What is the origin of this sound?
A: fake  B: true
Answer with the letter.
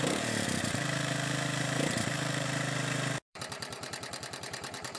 A